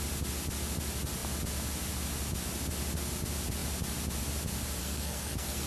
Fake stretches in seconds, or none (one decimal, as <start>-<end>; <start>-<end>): 4.8-5.7

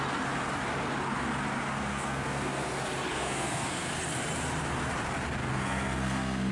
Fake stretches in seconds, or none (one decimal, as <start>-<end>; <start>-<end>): 1.9-2.7; 3.1-3.9; 5.4-6.5

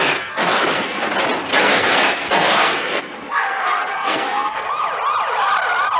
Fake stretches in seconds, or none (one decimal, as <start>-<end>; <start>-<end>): 0.0-1.1; 1.5-4.7

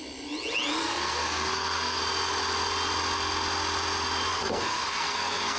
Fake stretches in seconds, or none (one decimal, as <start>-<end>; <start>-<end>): 0.8-2.0; 4.3-5.6

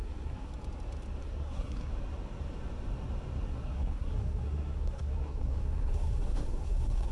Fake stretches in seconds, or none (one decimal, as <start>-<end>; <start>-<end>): 0.0-0.5; 1.2-1.9; 3.5-7.1